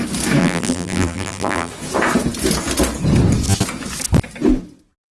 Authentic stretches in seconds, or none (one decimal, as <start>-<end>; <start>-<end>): 0.0-0.4; 1.7-5.1